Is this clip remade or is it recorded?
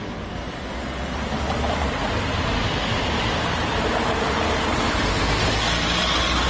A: recorded